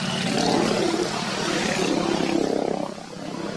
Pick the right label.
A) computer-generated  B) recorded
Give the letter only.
B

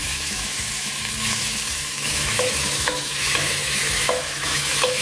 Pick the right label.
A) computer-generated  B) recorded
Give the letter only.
A